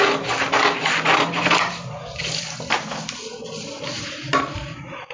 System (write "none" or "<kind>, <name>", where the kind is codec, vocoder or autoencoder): none